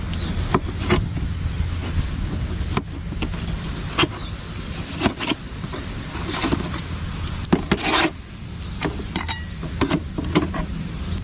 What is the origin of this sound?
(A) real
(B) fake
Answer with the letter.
A